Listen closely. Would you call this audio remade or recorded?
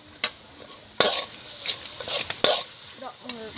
recorded